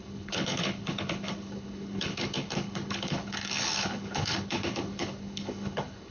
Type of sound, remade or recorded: remade